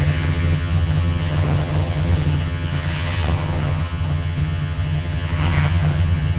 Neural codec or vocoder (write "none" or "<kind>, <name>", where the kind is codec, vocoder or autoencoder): vocoder, HiFi-GAN